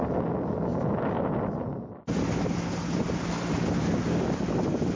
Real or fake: real